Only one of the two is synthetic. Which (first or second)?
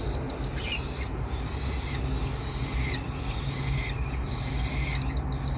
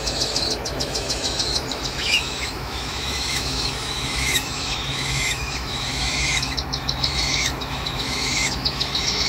second